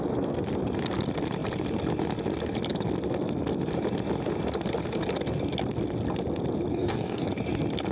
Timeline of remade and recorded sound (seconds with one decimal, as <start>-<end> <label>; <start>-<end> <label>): 0.0-6.7 recorded; 6.7-7.3 remade; 7.3-7.9 recorded